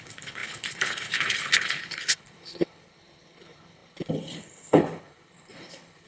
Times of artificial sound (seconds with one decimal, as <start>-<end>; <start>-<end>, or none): 0.0-6.1